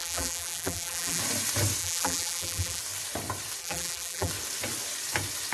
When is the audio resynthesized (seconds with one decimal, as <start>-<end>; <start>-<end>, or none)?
0.0-1.2; 1.8-2.8; 3.6-4.3